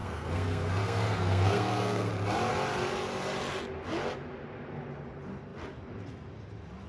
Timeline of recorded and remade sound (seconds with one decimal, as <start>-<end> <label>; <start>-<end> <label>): 0.0-2.1 remade; 2.1-6.9 recorded